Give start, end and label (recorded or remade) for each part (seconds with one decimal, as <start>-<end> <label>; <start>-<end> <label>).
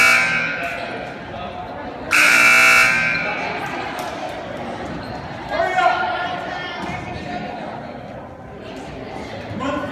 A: 0.0-3.6 recorded; 3.6-4.4 remade; 4.4-9.9 recorded